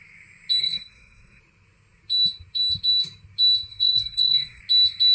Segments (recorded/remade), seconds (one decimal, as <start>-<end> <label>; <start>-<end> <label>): 0.0-0.6 recorded; 0.6-1.4 remade; 1.4-3.7 recorded; 3.7-4.6 remade; 4.6-5.1 recorded